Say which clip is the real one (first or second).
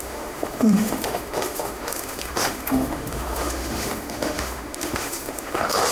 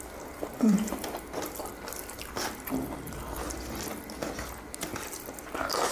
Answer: second